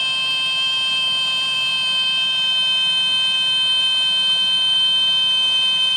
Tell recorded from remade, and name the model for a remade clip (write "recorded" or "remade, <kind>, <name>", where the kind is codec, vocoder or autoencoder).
remade, vocoder, BigVGAN v2